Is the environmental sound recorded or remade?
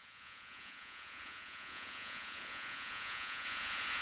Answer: remade